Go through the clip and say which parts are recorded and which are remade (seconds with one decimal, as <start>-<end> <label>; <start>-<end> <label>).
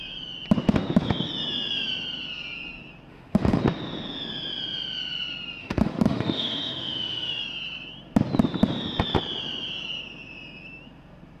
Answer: 0.0-3.1 recorded; 3.1-3.6 remade; 3.6-5.6 recorded; 5.6-7.4 remade; 7.4-11.4 recorded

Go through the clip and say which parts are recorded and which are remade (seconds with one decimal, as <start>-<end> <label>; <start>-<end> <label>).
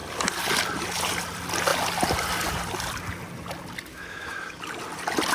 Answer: 0.0-3.9 recorded; 3.9-4.6 remade; 4.6-5.3 recorded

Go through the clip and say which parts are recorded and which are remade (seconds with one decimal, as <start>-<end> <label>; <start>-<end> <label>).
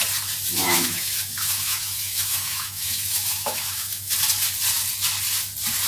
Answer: 0.0-0.6 recorded; 0.6-4.1 remade; 4.1-5.9 recorded